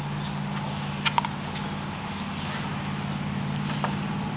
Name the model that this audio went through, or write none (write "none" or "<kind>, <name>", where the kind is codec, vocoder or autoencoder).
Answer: none